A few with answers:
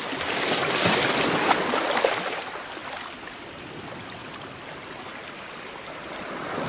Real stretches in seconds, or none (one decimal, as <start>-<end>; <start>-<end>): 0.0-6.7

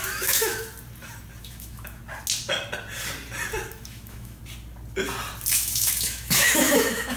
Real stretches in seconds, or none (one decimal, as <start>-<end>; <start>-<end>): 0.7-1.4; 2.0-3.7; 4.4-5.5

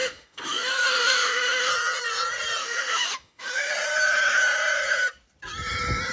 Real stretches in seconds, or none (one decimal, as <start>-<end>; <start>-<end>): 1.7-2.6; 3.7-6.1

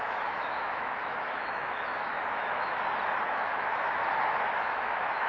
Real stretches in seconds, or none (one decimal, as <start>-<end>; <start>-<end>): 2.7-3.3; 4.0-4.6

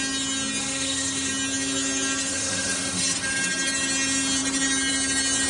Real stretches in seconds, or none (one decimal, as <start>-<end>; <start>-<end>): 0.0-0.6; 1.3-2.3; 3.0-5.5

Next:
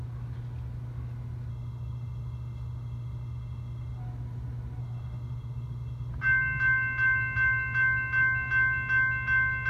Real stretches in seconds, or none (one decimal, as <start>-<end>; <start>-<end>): 0.0-1.5; 4.0-4.8; 6.1-9.7